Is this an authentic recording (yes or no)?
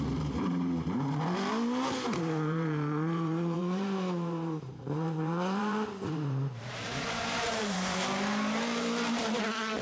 no